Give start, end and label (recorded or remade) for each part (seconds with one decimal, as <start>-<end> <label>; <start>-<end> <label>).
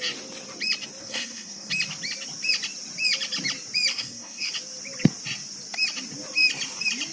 0.0-1.0 recorded; 1.0-1.7 remade; 1.7-3.9 recorded; 3.9-4.5 remade; 4.5-7.1 recorded